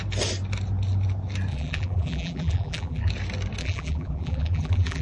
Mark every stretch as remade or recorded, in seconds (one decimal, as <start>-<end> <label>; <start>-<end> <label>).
0.0-1.5 recorded; 1.5-3.1 remade; 3.1-3.6 recorded; 3.6-5.0 remade